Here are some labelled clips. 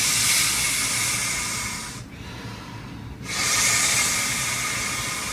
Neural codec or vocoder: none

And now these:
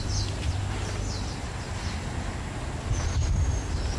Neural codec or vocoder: none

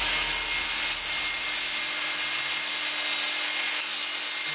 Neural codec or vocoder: none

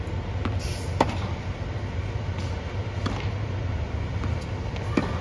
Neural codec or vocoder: none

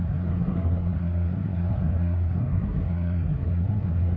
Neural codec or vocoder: codec, SNAC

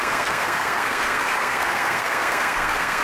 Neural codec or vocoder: codec, SNAC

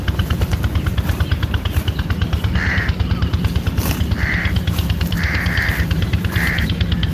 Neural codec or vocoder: none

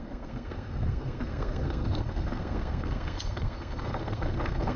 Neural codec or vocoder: codec, SNAC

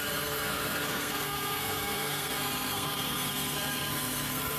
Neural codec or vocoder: codec, SNAC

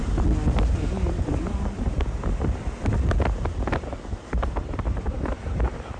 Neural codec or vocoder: none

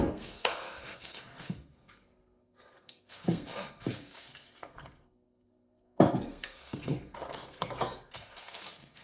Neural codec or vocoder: codec, SNAC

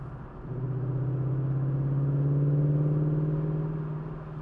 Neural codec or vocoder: none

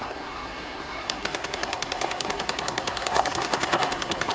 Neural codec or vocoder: codec, SNAC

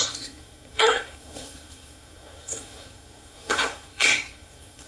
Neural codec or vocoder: codec, SNAC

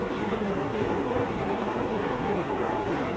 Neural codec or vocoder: codec, SNAC